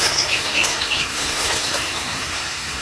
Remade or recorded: remade